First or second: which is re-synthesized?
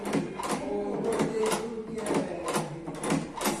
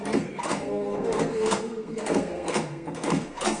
second